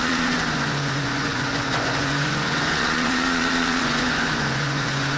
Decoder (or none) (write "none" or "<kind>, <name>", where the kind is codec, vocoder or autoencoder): vocoder, Vocos